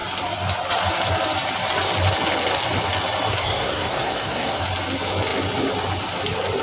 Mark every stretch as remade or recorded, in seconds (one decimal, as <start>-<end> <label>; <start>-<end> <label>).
0.0-3.3 recorded; 3.3-4.6 remade; 4.6-6.6 recorded